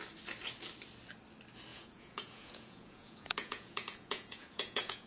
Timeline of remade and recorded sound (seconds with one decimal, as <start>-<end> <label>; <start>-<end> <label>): 0.0-1.7 recorded; 1.7-5.1 remade